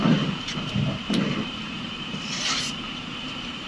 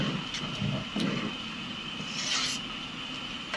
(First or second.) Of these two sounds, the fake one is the first